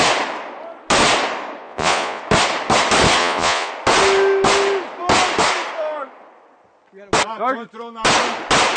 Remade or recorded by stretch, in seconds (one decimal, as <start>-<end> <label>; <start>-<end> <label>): 0.0-1.6 recorded; 1.6-2.2 remade; 2.2-3.2 recorded; 3.2-3.7 remade; 3.7-8.8 recorded